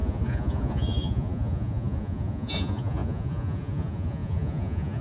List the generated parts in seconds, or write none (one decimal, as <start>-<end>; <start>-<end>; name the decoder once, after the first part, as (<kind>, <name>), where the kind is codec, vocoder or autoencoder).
0.0-5.0 (vocoder, Vocos)